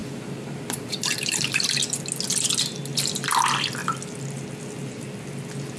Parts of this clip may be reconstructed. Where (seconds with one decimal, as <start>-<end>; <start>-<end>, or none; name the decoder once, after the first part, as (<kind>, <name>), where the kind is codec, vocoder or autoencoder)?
0.0-1.6 (vocoder, BigVGAN v2)